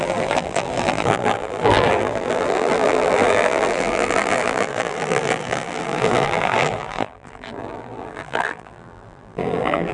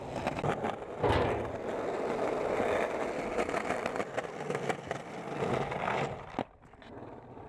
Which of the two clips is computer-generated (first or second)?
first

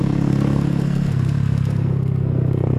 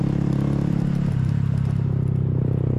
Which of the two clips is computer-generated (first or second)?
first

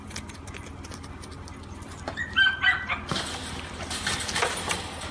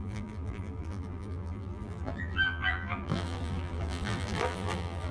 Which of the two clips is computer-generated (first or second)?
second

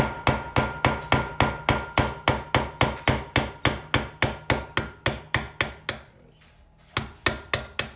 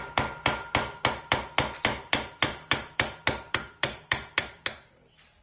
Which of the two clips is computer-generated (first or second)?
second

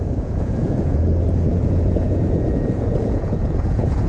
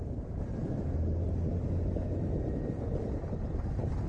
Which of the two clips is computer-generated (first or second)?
first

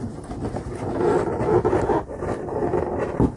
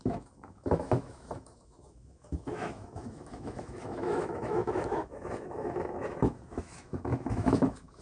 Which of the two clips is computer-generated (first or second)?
second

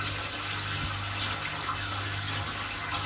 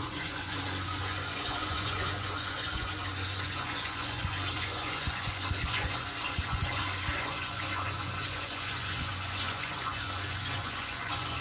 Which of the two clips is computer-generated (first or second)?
second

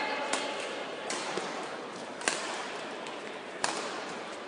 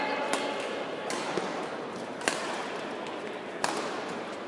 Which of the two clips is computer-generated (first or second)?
first